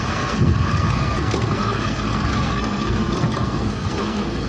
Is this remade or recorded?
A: remade